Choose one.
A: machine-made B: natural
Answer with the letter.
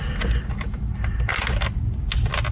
B